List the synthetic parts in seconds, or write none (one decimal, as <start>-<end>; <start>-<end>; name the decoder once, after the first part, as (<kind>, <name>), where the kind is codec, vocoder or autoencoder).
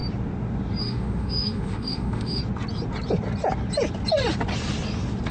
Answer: 0.8-2.4 (autoencoder, DAC-VAE)